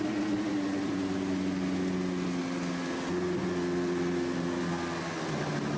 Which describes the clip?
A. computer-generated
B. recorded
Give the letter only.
B